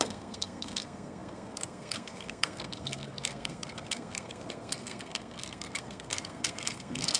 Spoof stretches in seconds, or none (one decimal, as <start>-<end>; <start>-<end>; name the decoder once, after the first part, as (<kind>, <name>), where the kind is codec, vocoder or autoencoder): 0.0-7.2 (codec, SNAC)